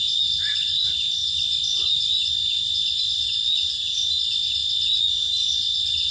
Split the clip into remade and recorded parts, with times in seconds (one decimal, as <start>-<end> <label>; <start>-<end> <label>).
0.0-6.1 recorded